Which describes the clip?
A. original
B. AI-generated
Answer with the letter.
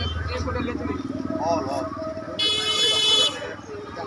A